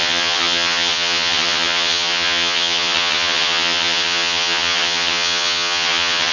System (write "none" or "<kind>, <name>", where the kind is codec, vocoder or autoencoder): vocoder, HiFi-GAN